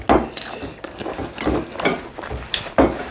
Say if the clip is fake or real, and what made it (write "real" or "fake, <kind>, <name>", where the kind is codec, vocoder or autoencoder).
real